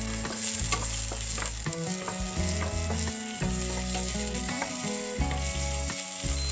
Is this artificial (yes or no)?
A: no